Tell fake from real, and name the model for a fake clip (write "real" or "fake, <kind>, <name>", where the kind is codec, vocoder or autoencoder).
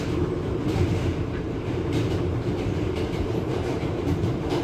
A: fake, vocoder, BigVGAN v2